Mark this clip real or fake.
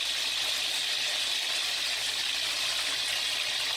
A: real